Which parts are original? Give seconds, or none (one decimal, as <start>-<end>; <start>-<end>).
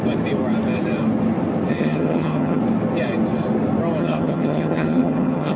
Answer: 0.0-1.7; 2.6-4.0